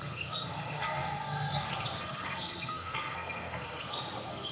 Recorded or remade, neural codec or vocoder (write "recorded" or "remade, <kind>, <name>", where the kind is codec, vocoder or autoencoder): remade, codec, SNAC